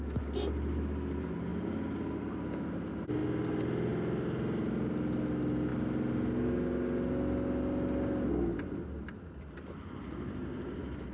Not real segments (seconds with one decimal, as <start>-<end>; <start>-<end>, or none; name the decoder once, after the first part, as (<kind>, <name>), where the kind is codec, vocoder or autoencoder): none